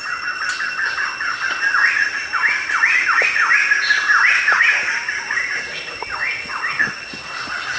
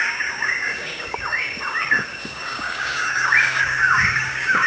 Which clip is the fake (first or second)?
second